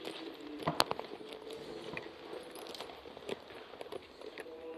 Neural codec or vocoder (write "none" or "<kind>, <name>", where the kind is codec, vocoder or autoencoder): none